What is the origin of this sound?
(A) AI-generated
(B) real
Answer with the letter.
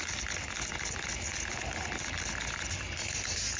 B